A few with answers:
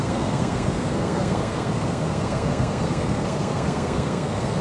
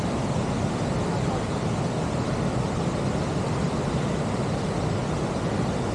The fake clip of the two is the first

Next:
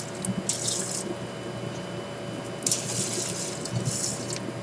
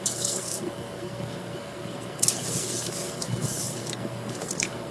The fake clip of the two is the second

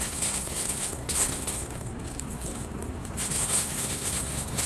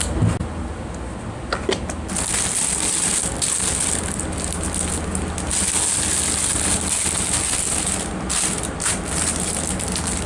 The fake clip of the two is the first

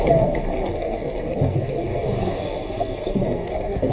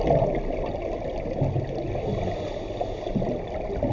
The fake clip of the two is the first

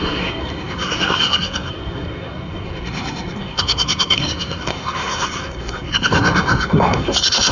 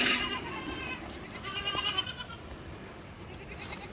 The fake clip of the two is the first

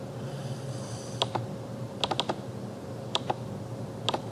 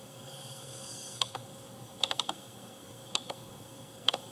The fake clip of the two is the second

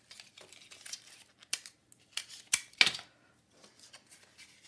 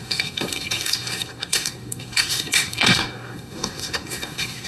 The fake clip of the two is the second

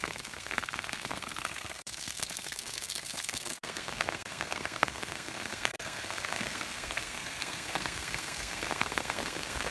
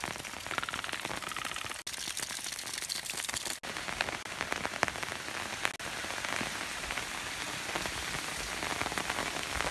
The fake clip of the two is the first